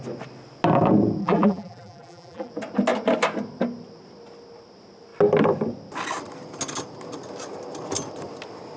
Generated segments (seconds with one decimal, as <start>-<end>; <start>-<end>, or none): 1.2-2.5